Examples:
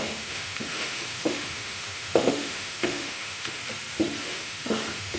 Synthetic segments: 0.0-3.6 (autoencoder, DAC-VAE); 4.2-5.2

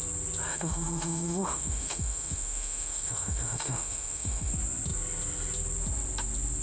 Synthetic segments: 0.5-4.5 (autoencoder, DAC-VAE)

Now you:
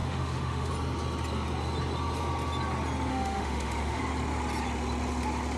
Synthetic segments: 0.0-0.7 (autoencoder, DAC-VAE); 3.1-4.0

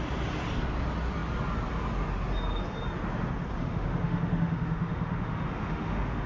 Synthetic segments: 3.6-6.3 (autoencoder, DAC-VAE)

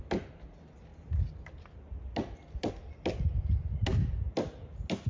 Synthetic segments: none

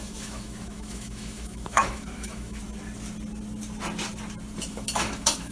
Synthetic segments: 0.0-2.6 (autoencoder, DAC-VAE); 4.7-5.5

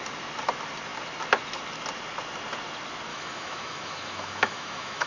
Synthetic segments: 3.1-5.1 (autoencoder, DAC-VAE)